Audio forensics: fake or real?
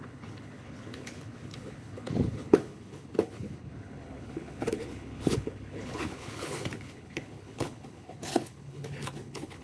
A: fake